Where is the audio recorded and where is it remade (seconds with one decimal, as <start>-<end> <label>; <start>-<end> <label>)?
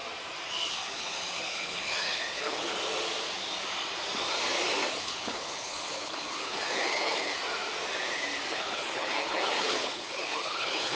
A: 0.0-0.7 recorded; 0.7-2.7 remade; 2.7-4.9 recorded; 4.9-7.4 remade; 7.4-8.5 recorded; 8.5-11.0 remade